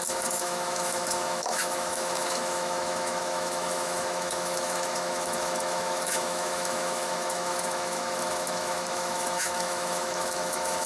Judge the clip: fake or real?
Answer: fake